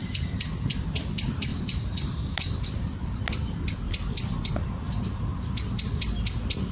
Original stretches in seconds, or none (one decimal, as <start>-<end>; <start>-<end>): 0.5-1.5; 2.6-6.7